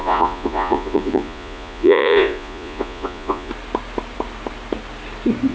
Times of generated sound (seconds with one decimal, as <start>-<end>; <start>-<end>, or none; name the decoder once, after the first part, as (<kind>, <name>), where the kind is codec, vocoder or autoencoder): 0.0-3.5 (vocoder, Vocos)